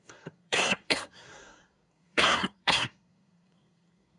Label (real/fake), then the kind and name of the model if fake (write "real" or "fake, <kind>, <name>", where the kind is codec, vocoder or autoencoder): fake, codec, SNAC